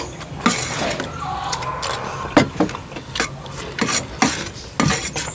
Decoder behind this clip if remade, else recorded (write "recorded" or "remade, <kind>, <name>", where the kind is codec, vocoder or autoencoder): recorded